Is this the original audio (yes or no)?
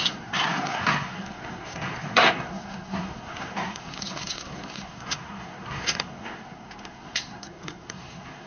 no